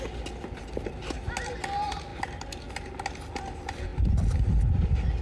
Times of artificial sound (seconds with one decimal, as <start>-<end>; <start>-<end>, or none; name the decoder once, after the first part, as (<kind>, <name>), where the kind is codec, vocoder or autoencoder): none